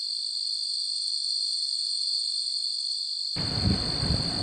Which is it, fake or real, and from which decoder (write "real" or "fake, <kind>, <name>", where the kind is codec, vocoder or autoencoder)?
fake, vocoder, BigVGAN v2